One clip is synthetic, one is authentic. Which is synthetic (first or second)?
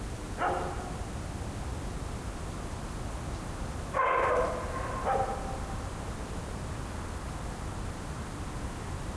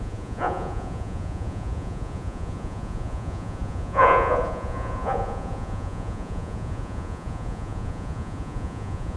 second